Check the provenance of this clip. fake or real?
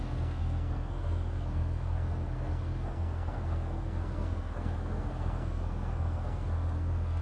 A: fake